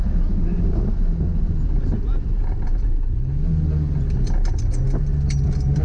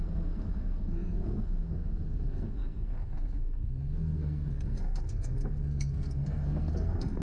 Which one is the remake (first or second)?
second